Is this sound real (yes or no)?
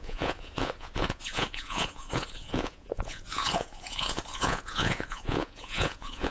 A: no